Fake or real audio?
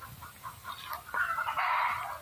real